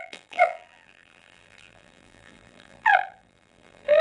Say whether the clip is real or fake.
fake